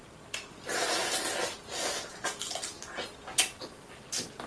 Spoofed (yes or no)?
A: no